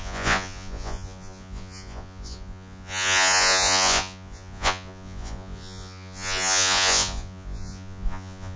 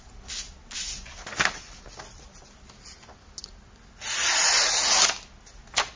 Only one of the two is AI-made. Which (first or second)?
first